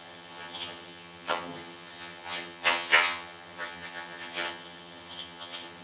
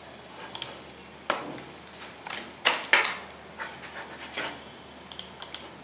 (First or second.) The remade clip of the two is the first